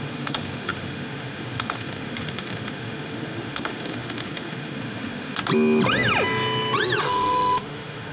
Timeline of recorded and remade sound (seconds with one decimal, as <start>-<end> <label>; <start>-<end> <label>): 0.0-5.4 remade; 5.4-7.0 recorded; 7.0-8.1 remade